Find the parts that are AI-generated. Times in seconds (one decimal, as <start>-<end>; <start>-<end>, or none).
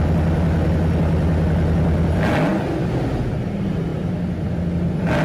none